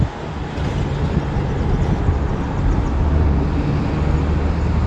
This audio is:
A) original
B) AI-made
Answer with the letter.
A